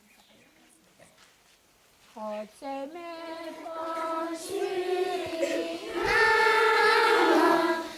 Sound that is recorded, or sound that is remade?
recorded